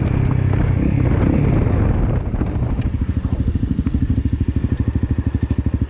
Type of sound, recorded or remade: recorded